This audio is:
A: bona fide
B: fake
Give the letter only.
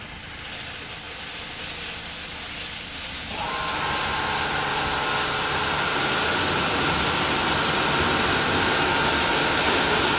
A